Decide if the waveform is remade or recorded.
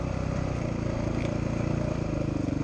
recorded